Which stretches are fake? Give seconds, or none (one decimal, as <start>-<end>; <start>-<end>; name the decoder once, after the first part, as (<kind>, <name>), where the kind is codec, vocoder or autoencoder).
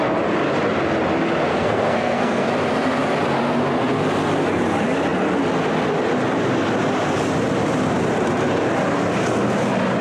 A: 1.5-2.5 (codec, SNAC)